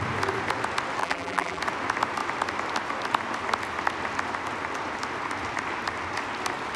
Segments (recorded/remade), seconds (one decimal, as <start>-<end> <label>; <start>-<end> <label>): 0.0-1.0 recorded; 1.0-1.6 remade; 1.6-6.8 recorded